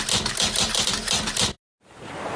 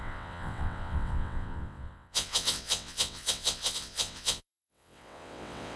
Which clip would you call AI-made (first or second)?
second